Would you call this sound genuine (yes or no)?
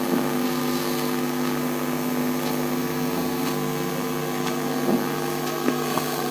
no